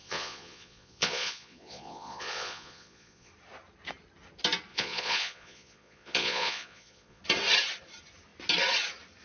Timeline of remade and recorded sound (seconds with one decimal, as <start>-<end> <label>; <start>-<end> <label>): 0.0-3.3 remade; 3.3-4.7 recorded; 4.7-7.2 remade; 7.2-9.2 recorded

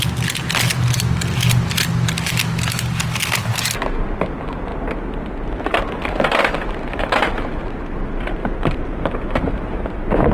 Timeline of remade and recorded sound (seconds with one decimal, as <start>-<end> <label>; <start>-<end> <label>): 0.0-8.4 recorded; 8.4-9.8 remade; 9.8-10.3 recorded

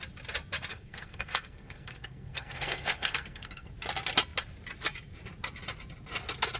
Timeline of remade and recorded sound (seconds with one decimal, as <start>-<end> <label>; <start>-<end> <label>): 0.0-0.7 recorded; 0.7-3.7 remade; 3.7-6.6 recorded

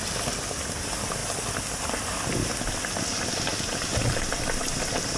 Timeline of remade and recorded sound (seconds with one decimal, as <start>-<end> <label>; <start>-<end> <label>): 0.0-3.5 recorded; 3.5-4.7 remade; 4.7-5.2 recorded

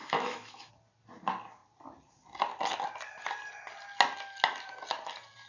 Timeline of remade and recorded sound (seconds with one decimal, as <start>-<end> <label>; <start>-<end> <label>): 0.0-0.7 remade; 0.7-5.5 recorded

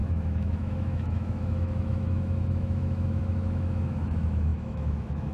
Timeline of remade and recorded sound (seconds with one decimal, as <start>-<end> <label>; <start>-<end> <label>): 0.0-5.3 remade

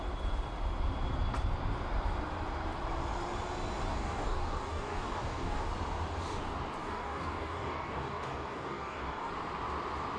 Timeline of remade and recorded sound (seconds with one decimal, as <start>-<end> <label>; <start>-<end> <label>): 0.0-3.9 recorded; 3.9-5.7 remade; 5.7-6.8 recorded; 6.8-9.3 remade; 9.3-10.2 recorded